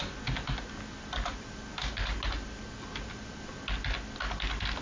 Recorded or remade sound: recorded